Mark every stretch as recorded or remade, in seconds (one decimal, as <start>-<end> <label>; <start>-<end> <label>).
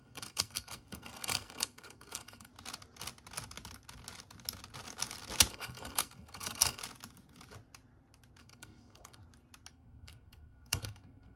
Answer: 0.0-2.5 remade; 2.5-5.5 recorded; 5.5-6.8 remade; 6.8-8.4 recorded; 8.4-9.2 remade; 9.2-9.7 recorded; 9.7-11.4 remade